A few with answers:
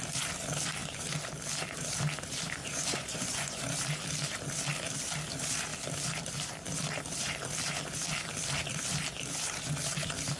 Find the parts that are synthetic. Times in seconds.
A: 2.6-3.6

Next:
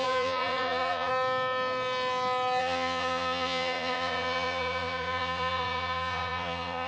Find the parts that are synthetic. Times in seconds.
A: 0.0-1.1; 2.6-6.9

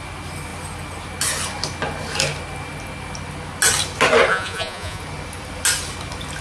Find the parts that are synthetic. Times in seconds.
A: 4.3-5.0

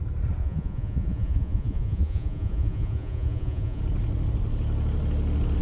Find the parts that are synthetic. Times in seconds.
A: 0.4-3.8

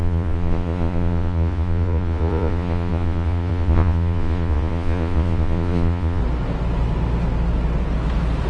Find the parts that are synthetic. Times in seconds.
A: 0.0-6.2

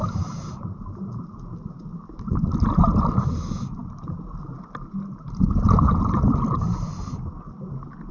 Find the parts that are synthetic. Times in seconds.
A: none

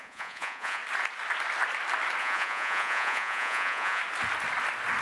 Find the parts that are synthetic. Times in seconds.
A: 0.0-0.8; 2.2-4.0